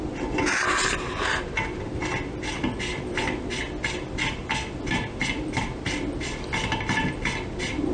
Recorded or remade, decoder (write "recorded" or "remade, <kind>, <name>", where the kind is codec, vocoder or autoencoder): recorded